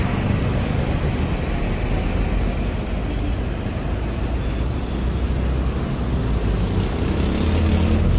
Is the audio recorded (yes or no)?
yes